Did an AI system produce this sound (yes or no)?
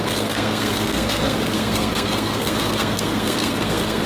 yes